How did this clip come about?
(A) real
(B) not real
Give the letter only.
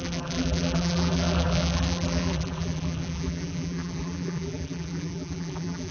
B